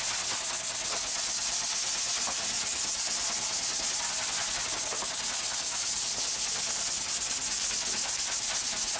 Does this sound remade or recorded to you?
recorded